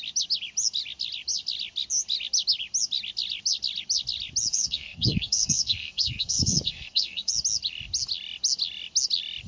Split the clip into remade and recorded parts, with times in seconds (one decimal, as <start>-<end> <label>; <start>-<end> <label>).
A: 0.0-4.5 recorded; 4.5-7.3 remade; 7.3-9.5 recorded